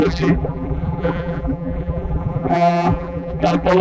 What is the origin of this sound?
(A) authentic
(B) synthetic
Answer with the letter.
B